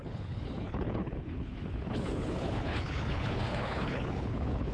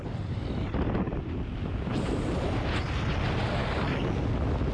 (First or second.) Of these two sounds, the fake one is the first